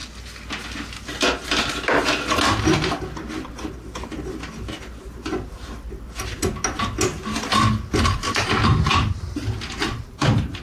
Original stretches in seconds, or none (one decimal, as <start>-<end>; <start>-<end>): 0.0-8.9